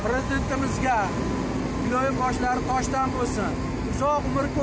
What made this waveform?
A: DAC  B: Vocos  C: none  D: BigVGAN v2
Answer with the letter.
C